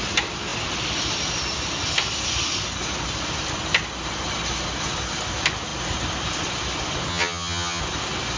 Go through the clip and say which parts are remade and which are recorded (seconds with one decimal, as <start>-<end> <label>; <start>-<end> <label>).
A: 0.0-7.1 recorded; 7.1-7.8 remade; 7.8-8.4 recorded